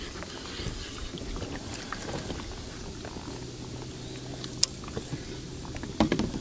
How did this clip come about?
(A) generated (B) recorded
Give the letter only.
B